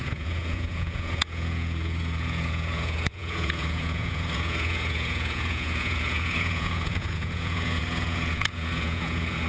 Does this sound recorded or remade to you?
remade